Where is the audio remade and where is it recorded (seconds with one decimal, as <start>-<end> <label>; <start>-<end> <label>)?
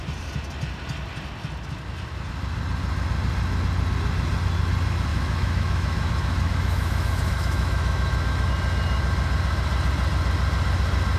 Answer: 0.0-5.1 recorded; 5.1-8.5 remade; 8.5-11.2 recorded